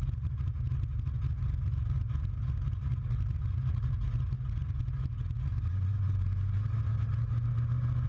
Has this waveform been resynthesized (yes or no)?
no